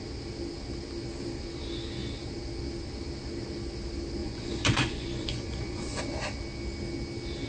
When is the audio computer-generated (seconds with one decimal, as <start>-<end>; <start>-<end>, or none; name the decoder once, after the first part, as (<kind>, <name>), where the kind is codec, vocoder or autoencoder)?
4.2-6.0 (vocoder, Vocos)